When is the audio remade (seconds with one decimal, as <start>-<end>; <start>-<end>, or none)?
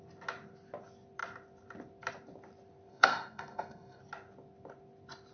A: 2.9-4.0